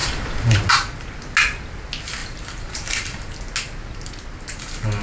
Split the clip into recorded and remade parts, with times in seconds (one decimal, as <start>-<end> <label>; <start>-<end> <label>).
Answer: 0.0-0.7 remade; 0.7-2.2 recorded; 2.2-3.4 remade; 3.4-5.0 recorded